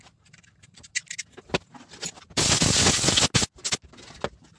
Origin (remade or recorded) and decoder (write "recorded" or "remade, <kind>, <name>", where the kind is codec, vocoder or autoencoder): recorded